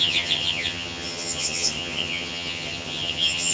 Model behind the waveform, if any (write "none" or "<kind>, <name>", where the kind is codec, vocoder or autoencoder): vocoder, HiFi-GAN